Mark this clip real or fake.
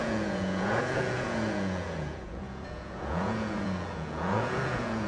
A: fake